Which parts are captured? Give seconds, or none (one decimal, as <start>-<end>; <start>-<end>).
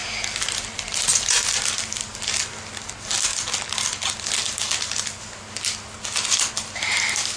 0.0-7.4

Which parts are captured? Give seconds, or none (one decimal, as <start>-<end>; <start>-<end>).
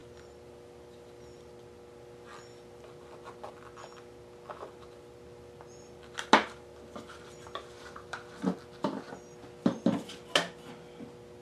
0.0-11.4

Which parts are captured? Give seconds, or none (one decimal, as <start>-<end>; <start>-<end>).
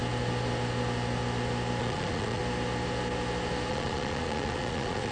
0.0-1.8; 2.4-3.7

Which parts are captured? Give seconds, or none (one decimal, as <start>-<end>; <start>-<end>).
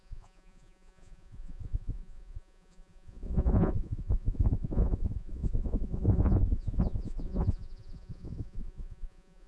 none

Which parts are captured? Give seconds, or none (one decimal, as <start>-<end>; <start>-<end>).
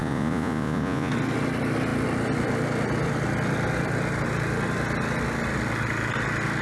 1.1-6.6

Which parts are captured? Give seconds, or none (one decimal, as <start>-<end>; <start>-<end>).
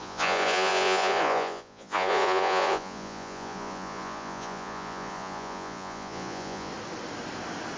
6.7-7.8